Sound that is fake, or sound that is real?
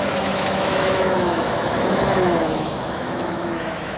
fake